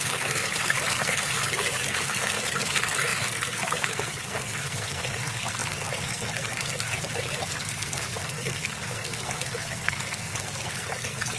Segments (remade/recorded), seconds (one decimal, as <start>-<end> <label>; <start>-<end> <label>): 0.0-11.4 remade